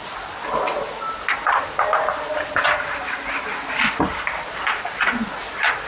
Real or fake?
real